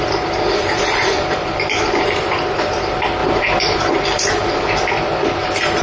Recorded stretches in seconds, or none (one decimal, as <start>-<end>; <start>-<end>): 4.4-5.8